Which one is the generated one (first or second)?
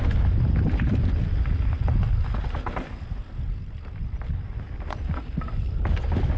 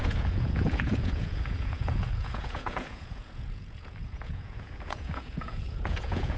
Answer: second